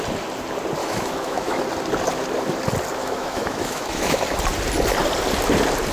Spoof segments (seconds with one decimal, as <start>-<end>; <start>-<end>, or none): 0.8-1.6; 3.0-4.2